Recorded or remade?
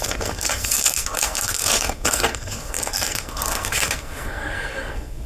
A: remade